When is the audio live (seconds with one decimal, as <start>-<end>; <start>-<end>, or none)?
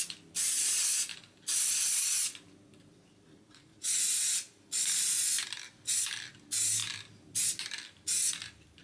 0.0-8.8